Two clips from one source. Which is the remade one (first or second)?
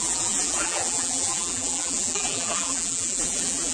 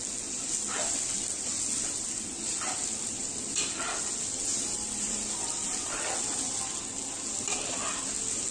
first